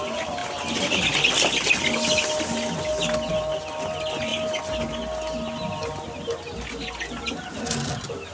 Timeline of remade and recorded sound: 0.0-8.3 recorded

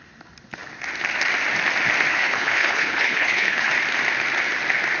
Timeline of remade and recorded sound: 0.0-2.1 recorded; 2.1-3.7 remade; 3.7-5.0 recorded

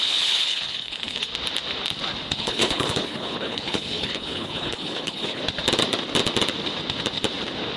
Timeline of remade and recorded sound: 0.0-1.3 remade; 1.3-2.4 recorded; 2.4-5.4 remade; 5.4-7.8 recorded

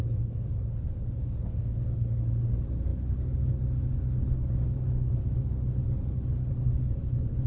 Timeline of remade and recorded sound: 0.0-7.5 remade

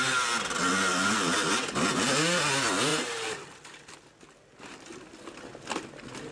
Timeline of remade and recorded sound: 0.0-6.3 recorded

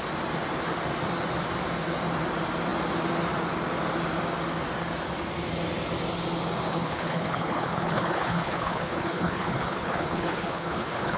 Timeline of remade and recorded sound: 0.0-6.7 recorded; 6.7-11.2 remade

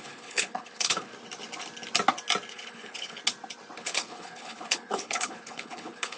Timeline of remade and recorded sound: 0.0-1.1 remade; 1.1-2.5 recorded; 2.5-3.2 remade; 3.2-3.8 recorded; 3.8-6.2 remade